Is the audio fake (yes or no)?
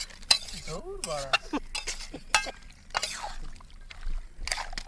no